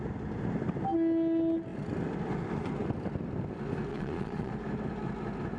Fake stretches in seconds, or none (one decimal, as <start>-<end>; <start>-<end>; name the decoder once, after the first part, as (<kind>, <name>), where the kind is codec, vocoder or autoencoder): 3.9-4.5 (vocoder, Vocos)